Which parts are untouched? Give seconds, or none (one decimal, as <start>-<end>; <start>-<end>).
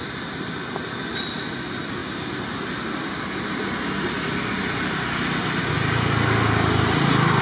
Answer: 0.0-7.4